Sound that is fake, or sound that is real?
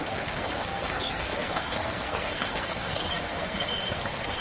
fake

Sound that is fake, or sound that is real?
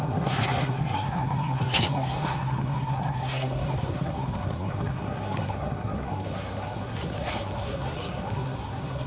fake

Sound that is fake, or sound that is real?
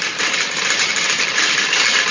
real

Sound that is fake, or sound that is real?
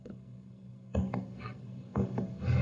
fake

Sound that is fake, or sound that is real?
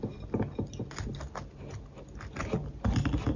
real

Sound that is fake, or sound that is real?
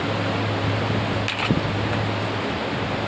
real